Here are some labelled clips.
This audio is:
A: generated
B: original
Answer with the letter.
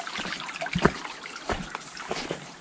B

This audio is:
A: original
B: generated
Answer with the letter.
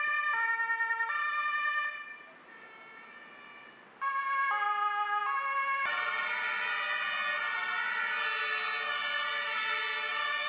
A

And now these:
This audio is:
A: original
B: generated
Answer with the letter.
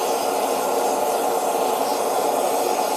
A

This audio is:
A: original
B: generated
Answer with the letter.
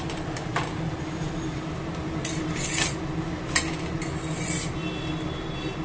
A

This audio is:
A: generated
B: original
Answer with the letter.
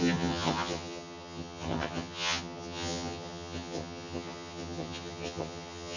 A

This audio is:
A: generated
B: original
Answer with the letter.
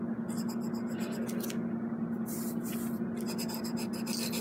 B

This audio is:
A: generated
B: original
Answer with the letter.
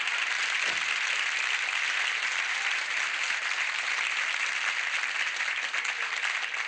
B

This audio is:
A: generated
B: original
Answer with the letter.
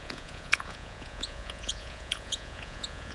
A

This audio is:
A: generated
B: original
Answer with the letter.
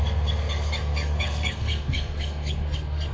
A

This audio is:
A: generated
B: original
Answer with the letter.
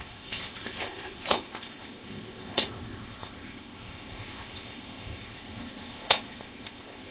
A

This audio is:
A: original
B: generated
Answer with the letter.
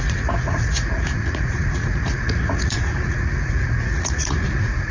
B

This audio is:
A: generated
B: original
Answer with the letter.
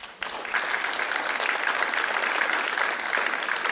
B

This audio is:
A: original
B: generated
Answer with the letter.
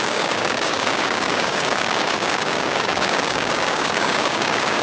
B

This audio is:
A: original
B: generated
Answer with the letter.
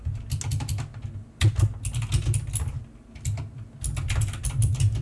A